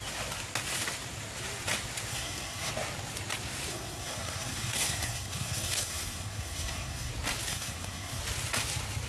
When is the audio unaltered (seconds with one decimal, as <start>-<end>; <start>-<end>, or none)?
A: 0.0-2.1; 2.7-3.7; 7.1-7.5; 8.2-9.1